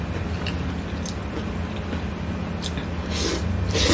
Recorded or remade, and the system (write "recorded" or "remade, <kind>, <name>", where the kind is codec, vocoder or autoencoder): recorded